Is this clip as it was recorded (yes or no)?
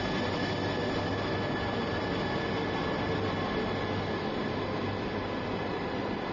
yes